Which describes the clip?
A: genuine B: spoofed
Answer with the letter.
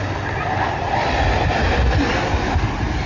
A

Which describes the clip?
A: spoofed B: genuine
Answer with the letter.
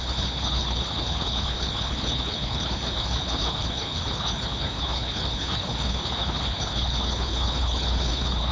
A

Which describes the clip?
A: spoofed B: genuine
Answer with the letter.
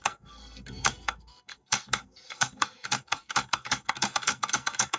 A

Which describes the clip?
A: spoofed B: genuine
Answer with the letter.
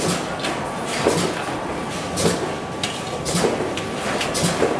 B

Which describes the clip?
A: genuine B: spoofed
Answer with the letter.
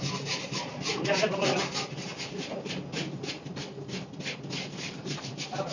A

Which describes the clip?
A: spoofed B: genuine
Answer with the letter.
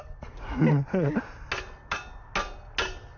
B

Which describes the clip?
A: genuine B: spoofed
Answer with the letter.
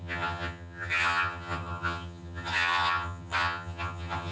B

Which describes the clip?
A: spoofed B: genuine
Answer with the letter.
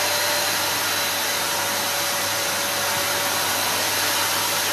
B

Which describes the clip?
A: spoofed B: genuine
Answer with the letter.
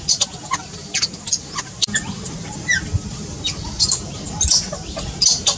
B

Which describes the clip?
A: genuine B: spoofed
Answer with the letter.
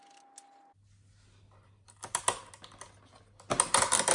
A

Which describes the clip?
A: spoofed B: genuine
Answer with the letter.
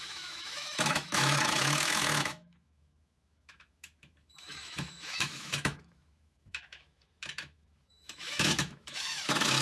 A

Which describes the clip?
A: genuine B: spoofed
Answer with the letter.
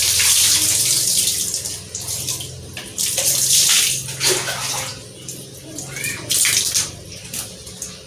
B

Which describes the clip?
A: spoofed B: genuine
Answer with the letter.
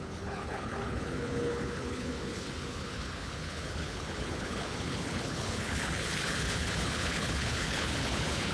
A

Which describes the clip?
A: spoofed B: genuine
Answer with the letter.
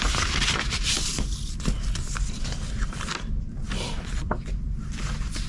A